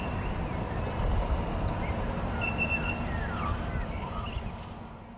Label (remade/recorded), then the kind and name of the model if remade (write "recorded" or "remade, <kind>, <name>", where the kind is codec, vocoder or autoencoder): recorded